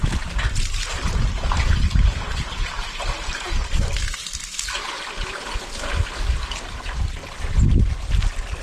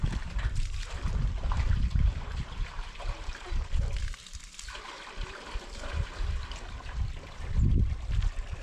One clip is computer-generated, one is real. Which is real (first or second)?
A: first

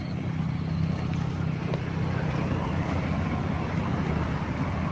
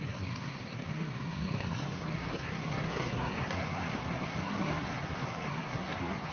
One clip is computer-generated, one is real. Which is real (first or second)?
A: first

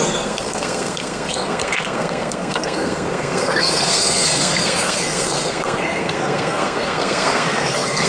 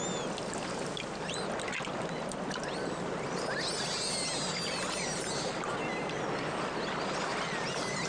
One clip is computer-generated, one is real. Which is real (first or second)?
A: second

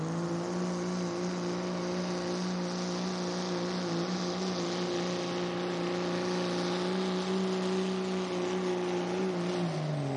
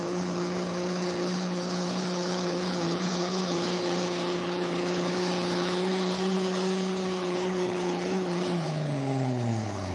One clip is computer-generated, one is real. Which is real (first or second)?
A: first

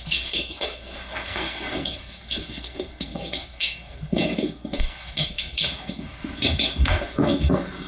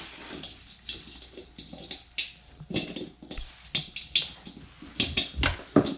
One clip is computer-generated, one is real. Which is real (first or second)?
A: second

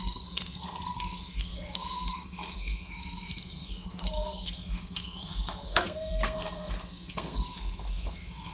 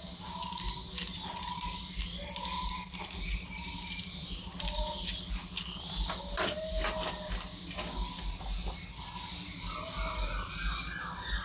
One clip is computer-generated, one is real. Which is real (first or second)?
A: second